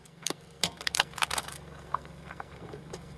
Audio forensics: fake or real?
fake